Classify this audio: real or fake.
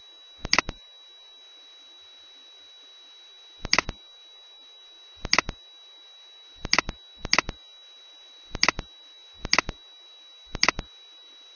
real